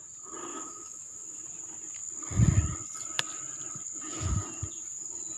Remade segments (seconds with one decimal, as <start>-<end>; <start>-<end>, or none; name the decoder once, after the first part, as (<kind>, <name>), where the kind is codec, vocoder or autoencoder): 0.5-1.4 (autoencoder, DAC-VAE)